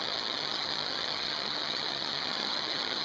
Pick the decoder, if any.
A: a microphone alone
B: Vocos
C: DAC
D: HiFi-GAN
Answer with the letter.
D